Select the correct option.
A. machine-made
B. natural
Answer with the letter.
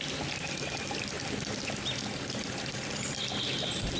B